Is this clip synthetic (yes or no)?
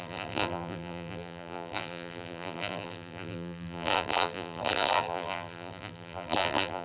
yes